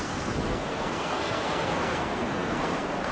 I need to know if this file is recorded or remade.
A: remade